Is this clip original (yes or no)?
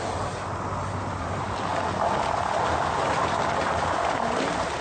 yes